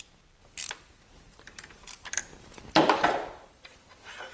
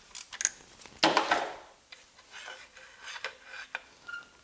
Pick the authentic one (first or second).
second